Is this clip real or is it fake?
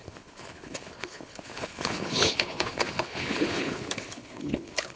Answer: fake